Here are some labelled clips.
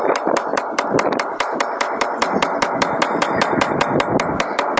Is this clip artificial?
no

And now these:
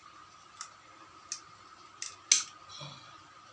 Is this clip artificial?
no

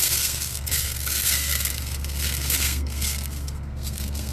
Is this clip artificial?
yes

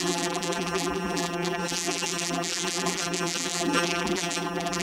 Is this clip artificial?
yes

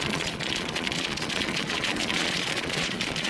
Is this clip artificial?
yes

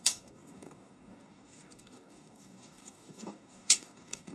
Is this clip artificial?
yes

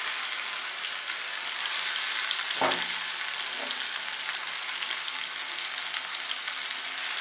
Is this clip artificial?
no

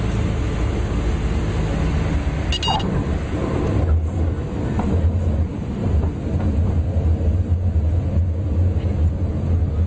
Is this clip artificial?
no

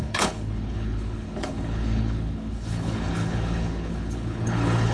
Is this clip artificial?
yes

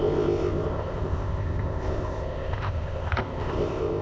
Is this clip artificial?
yes